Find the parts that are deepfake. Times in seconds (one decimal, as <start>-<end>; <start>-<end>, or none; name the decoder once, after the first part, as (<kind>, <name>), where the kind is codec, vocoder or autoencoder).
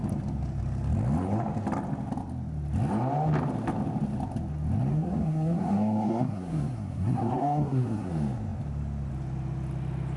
4.9-8.1 (codec, SNAC)